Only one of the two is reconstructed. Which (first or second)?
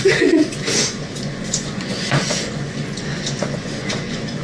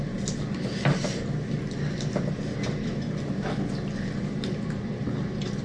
first